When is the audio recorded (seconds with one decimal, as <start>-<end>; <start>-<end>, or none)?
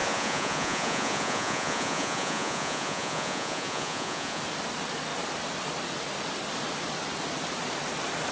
4.4-8.3